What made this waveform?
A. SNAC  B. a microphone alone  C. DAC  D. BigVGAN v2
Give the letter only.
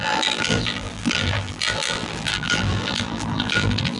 D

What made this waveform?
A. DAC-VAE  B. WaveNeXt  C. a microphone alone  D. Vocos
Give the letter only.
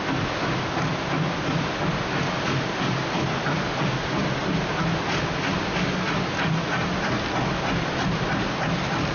C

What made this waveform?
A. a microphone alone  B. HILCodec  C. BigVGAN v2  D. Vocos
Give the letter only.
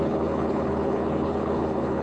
B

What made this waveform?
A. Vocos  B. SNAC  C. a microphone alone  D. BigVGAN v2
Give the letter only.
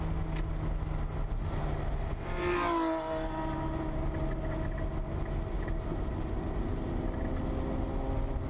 C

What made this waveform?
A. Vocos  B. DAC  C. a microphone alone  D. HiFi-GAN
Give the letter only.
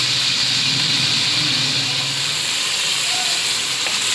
C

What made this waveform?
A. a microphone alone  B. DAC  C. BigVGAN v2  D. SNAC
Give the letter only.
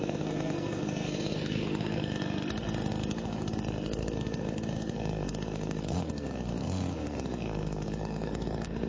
D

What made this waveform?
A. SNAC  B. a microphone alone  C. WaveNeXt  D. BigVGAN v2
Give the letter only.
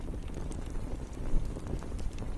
D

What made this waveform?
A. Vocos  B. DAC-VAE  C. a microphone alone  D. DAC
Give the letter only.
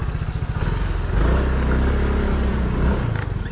C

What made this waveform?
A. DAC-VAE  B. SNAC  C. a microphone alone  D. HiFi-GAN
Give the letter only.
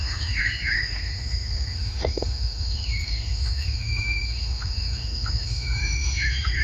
A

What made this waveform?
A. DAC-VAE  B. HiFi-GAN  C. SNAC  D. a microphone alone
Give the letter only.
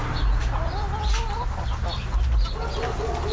D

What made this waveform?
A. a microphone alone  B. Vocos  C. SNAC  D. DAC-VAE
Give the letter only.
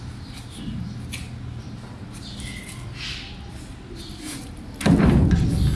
A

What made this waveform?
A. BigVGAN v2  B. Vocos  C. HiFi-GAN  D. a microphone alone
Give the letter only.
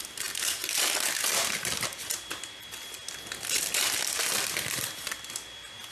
A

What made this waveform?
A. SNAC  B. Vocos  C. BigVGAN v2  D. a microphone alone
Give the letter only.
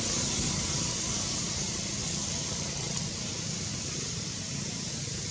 D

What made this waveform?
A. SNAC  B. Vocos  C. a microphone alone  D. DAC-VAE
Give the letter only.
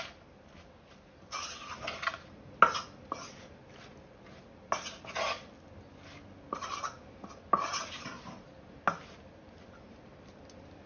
C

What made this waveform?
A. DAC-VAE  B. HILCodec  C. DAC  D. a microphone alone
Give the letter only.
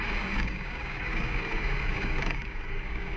C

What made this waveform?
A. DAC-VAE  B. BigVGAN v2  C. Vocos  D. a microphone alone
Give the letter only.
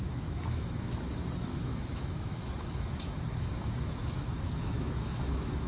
A